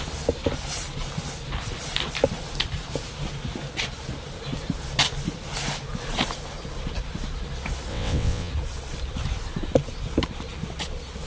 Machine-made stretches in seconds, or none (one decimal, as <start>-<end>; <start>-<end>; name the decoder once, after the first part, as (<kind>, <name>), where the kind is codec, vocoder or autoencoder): 7.9-8.5 (vocoder, WaveNeXt)